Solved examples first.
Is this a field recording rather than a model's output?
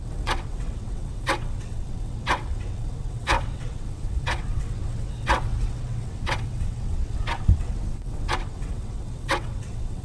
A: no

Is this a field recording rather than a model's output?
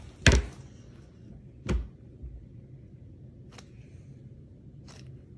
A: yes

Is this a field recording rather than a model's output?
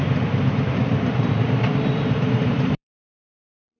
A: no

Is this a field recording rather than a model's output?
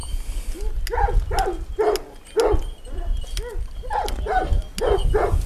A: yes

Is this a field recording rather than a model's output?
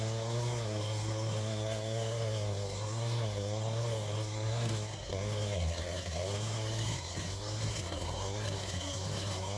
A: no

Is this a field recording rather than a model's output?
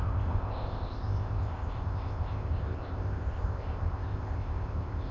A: no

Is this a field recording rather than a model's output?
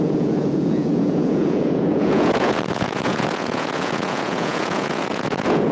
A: no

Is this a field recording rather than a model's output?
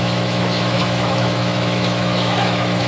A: no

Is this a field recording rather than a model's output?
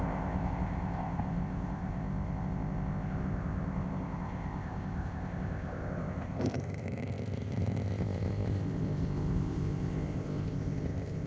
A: no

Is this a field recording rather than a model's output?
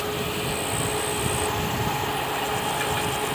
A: yes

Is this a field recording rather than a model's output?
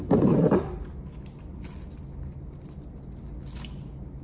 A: yes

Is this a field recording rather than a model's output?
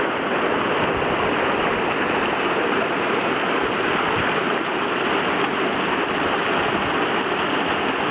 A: yes